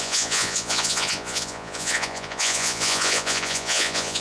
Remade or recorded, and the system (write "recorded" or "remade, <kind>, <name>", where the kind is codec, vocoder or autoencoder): remade, vocoder, Vocos